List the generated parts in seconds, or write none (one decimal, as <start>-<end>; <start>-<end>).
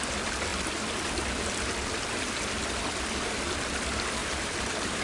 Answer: 4.2-5.0